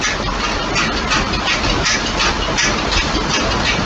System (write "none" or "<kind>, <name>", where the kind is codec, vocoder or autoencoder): none